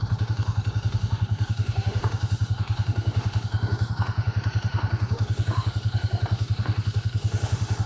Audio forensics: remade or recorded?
remade